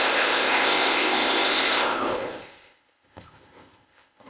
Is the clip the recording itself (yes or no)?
no